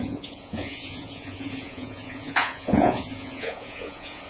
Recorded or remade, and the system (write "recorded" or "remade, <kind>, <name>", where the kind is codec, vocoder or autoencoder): remade, vocoder, Vocos